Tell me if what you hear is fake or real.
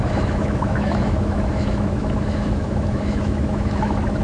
fake